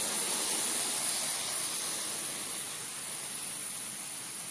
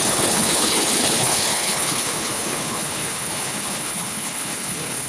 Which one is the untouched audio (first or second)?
first